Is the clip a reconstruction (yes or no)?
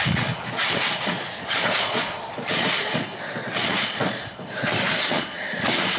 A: yes